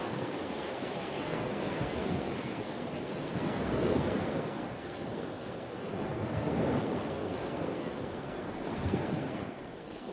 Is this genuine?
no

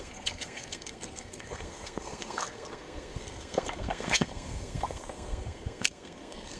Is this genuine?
no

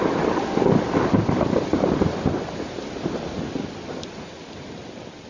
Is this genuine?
yes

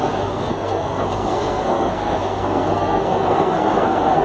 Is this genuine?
no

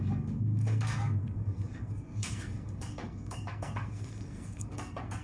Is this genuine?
no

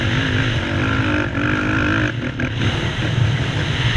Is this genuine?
yes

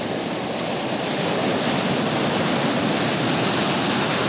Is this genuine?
yes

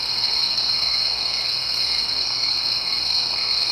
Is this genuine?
no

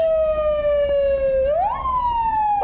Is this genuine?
yes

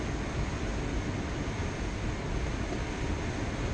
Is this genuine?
yes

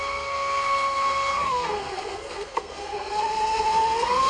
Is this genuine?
no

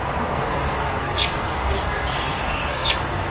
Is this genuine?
no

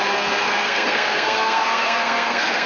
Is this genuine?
no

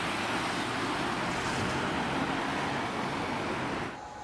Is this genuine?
yes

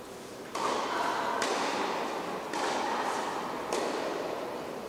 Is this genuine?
yes